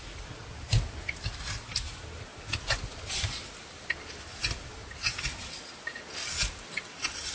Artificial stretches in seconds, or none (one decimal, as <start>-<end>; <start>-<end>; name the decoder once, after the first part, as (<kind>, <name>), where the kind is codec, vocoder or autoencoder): none